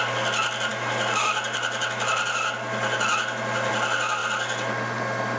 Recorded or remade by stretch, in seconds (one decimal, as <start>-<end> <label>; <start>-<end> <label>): 0.0-5.4 recorded